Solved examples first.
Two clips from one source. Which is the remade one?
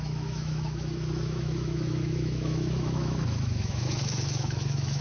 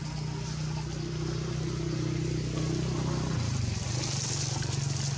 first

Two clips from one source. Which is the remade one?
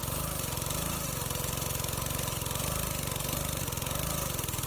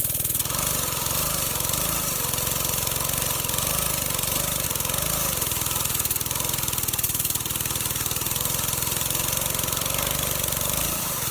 second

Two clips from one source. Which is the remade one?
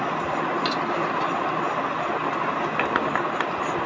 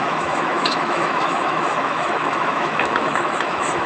second